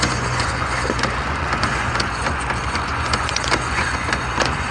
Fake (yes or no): yes